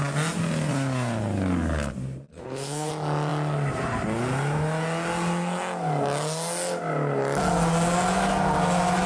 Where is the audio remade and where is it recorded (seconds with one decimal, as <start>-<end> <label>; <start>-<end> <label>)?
0.0-2.3 recorded; 2.3-2.9 remade; 2.9-9.1 recorded